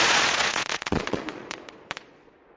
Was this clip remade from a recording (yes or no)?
yes